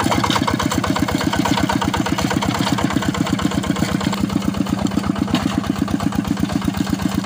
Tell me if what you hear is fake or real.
real